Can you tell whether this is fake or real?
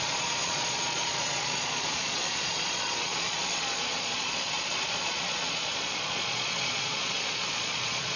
fake